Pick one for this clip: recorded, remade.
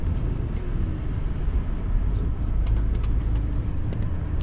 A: recorded